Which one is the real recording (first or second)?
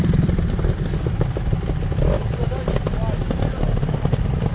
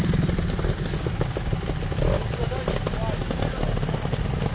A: second